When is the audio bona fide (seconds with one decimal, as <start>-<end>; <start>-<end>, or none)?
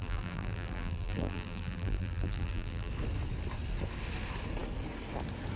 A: 2.9-5.6